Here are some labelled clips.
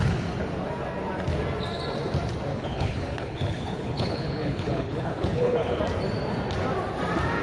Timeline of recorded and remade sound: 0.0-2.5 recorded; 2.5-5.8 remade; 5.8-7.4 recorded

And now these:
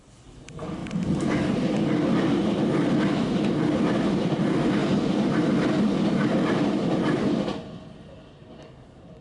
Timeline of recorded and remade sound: 0.0-0.8 remade; 0.8-2.2 recorded; 2.2-4.8 remade; 4.8-7.1 recorded; 7.1-7.5 remade; 7.5-8.6 recorded; 8.6-9.2 remade

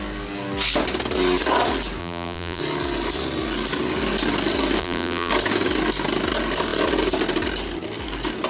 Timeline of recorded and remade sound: 0.0-2.0 recorded; 2.0-2.6 remade; 2.6-4.8 recorded; 4.8-5.3 remade; 5.3-8.5 recorded

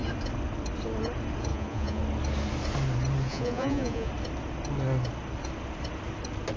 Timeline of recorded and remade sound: 0.0-1.5 recorded; 1.5-2.0 remade; 2.0-3.3 recorded; 3.3-4.1 remade; 4.1-6.6 recorded

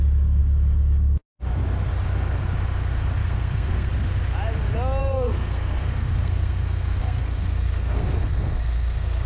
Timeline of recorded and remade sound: 0.0-3.2 recorded; 3.2-3.9 remade; 3.9-5.0 recorded; 5.0-9.3 remade

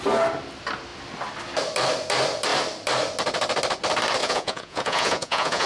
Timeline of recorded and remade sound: 0.0-4.2 recorded; 4.2-5.7 remade

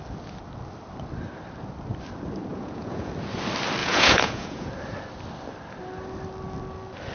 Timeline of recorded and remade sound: 0.0-2.5 recorded; 2.5-3.1 remade; 3.1-3.8 recorded; 3.8-4.7 remade; 4.7-7.1 recorded

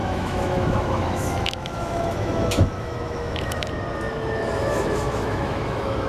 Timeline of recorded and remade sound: 0.0-3.7 remade; 3.7-4.6 recorded; 4.6-6.1 remade